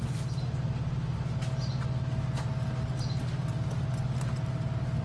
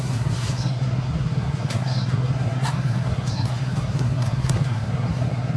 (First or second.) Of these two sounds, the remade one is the second